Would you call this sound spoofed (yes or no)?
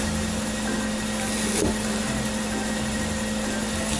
no